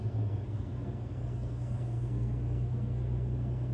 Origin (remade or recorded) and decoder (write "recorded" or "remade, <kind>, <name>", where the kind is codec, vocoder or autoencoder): remade, codec, SNAC